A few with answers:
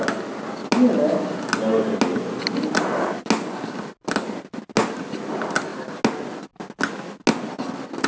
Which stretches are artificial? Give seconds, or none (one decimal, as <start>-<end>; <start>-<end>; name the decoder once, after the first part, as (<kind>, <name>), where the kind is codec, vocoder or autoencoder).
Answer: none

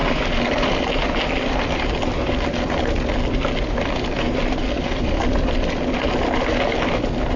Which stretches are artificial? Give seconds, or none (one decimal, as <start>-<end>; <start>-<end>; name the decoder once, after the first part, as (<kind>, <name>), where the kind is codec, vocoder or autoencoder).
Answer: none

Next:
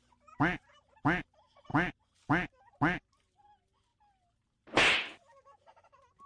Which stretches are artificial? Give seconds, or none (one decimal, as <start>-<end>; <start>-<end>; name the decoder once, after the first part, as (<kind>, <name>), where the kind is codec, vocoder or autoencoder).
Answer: none